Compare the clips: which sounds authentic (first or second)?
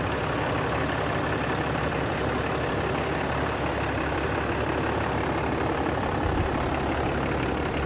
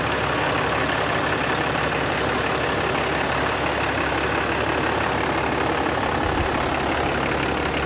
second